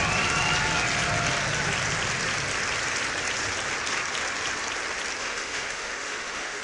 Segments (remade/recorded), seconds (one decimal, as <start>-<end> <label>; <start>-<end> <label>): 0.0-5.2 recorded; 5.2-6.6 remade